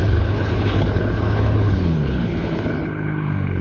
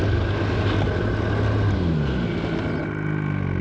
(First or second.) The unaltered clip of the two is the second